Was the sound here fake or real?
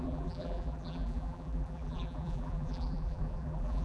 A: fake